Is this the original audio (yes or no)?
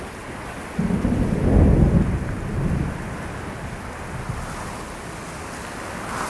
yes